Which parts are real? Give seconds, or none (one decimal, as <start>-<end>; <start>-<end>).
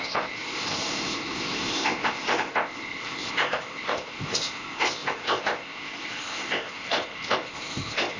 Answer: none